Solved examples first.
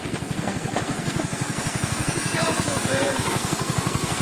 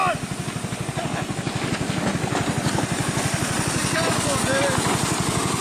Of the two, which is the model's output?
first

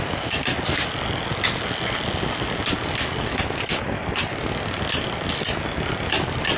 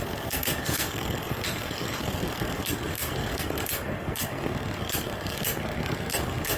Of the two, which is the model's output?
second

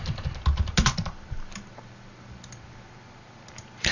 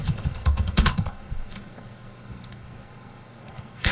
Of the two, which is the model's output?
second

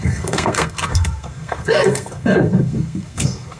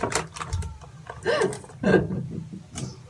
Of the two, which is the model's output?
first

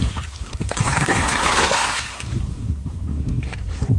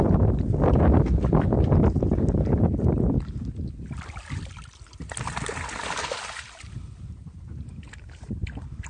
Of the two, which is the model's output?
first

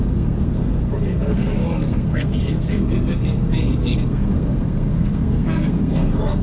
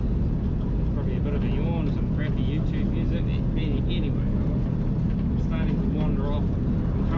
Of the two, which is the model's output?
first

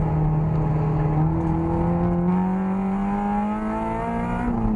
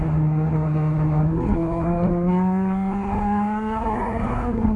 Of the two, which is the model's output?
second